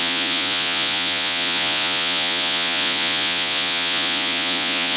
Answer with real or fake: fake